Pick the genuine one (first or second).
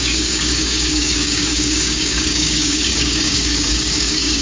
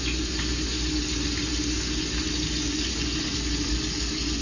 second